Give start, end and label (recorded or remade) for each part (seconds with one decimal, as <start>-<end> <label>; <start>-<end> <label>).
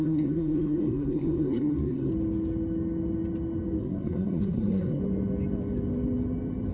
0.0-2.1 remade; 2.1-3.8 recorded; 3.8-5.0 remade; 5.0-6.7 recorded